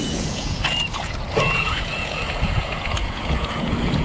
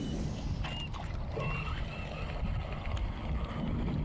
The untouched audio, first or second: second